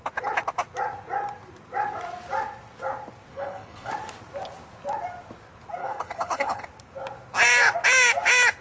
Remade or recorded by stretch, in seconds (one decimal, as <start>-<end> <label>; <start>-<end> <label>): 0.0-3.3 recorded; 3.3-3.9 remade; 3.9-5.8 recorded; 5.8-6.6 remade; 6.6-8.6 recorded